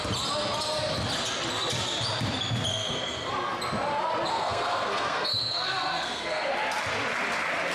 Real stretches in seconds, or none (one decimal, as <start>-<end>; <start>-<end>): 0.0-2.7; 3.3-4.3; 6.5-7.7